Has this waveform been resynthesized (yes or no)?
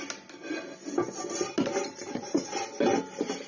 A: no